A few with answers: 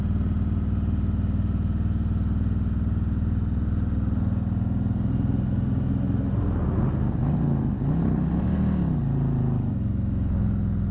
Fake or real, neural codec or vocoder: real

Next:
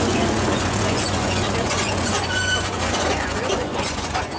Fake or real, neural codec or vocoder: fake, vocoder, Vocos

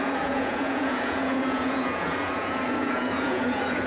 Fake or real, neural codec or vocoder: fake, vocoder, Vocos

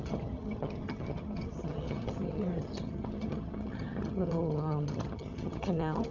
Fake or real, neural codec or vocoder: fake, vocoder, HiFi-GAN